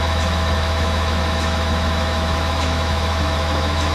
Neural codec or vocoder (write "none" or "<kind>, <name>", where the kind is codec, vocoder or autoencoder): autoencoder, DAC-VAE